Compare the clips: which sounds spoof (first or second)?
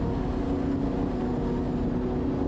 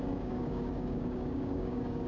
second